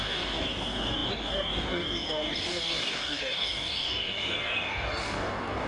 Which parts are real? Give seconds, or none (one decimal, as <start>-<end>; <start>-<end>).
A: none